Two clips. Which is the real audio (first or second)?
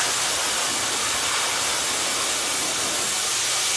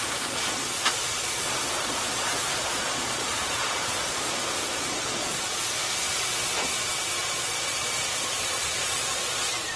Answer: first